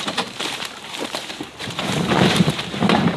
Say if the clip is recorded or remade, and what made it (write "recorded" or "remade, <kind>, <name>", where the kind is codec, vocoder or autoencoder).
remade, vocoder, BigVGAN v2